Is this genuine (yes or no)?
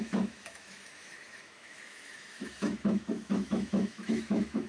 no